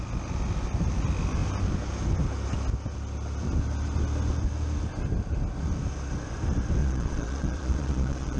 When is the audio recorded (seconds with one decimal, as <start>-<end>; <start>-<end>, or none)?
0.0-6.8